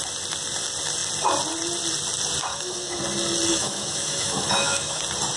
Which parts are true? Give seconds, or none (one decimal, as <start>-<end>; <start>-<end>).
0.0-2.5; 3.0-3.5; 5.0-5.4